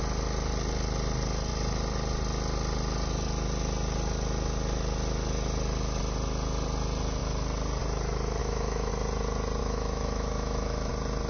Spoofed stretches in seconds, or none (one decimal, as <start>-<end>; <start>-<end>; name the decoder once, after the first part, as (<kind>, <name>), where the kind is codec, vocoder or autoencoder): 8.4-8.9 (autoencoder, DAC-VAE); 9.6-10.9